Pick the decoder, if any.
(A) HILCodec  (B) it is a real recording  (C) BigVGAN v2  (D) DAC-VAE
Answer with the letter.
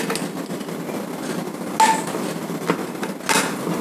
B